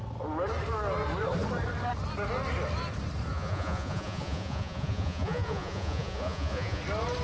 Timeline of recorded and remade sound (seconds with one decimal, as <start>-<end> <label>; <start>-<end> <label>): 0.0-3.3 recorded; 3.3-6.8 remade; 6.8-7.2 recorded